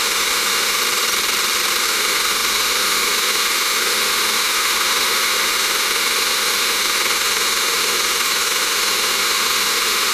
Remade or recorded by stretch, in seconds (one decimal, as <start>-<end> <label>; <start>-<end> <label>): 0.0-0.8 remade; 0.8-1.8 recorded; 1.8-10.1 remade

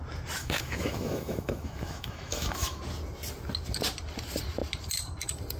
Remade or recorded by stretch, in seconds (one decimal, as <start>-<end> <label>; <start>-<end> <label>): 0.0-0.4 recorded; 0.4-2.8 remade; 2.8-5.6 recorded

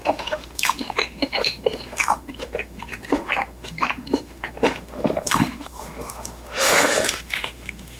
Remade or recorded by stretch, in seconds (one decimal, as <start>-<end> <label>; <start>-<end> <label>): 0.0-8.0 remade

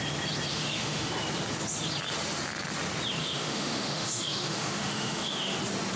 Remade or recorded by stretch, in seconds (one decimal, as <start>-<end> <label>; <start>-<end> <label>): 0.0-0.5 recorded; 0.5-1.1 remade; 1.1-3.2 recorded; 3.2-5.6 remade; 5.6-6.0 recorded

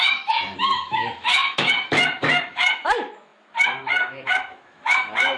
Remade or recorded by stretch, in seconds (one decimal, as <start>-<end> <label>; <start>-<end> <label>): 0.0-5.4 remade

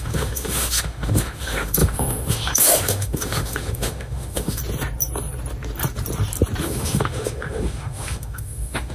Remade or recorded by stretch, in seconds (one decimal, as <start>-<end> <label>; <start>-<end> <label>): 0.0-4.6 remade; 4.6-6.6 recorded; 6.6-8.9 remade

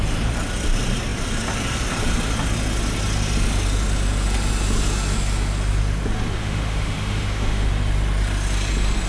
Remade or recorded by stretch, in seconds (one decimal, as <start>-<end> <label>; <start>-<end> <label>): 0.0-6.4 recorded; 6.4-7.7 remade; 7.7-9.1 recorded

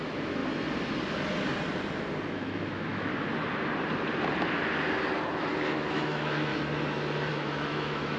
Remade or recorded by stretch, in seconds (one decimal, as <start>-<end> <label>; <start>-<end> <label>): 0.0-0.4 remade; 0.4-2.3 recorded; 2.3-3.1 remade; 3.1-5.9 recorded; 5.9-6.5 remade; 6.5-7.3 recorded; 7.3-8.2 remade